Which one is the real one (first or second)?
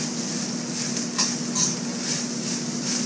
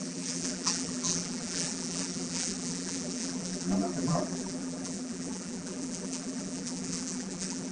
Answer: first